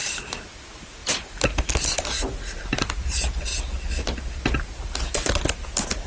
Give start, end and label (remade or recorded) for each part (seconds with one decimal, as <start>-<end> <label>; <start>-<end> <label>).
0.0-6.1 recorded